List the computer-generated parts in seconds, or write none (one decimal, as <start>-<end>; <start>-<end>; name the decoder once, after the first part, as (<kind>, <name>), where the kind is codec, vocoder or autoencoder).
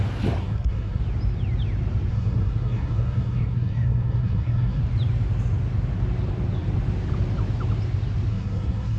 0.4-1.0 (codec, SNAC); 2.1-4.8; 8.3-9.0